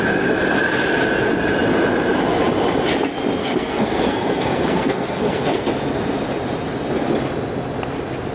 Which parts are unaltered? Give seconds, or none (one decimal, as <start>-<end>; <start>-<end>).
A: 0.0-3.4; 5.7-8.3